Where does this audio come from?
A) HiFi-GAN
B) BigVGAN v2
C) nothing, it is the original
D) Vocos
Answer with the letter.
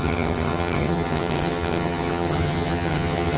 A